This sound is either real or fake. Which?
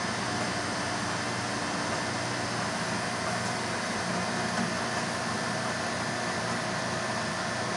real